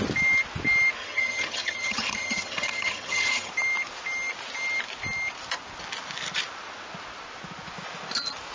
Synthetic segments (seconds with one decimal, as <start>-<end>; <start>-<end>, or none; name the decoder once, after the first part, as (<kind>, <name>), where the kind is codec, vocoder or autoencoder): 1.0-3.5 (vocoder, HiFi-GAN)